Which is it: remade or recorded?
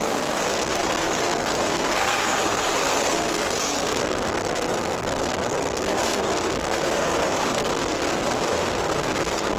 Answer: remade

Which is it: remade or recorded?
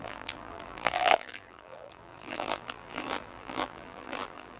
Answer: remade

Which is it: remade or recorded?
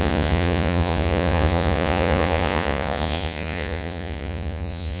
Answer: remade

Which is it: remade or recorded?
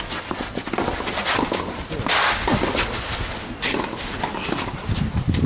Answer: recorded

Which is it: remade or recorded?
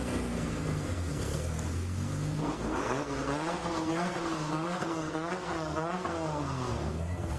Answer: remade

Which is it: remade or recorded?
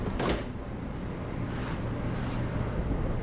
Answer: remade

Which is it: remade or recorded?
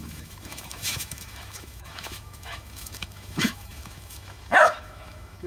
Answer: remade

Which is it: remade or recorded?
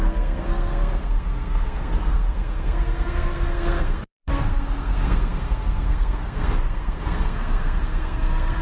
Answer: remade